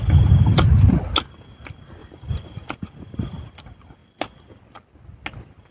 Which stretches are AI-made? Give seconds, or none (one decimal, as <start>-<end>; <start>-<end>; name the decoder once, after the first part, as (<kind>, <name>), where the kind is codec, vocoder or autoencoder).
2.0-2.7 (vocoder, BigVGAN v2)